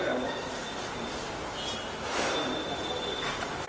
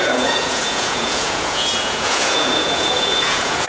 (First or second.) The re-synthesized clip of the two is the second